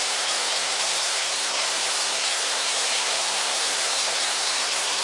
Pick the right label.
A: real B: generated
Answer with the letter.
B